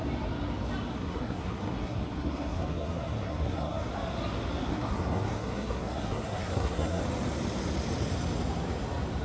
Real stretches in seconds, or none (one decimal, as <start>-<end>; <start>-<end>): 0.0-0.9; 3.9-4.7; 7.0-9.2